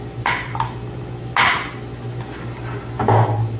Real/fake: real